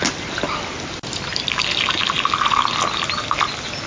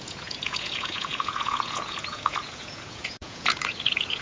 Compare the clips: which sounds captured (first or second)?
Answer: first